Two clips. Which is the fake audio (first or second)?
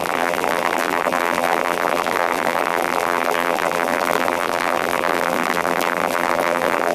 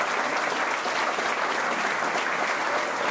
first